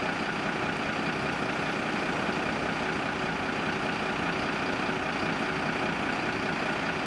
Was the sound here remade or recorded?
recorded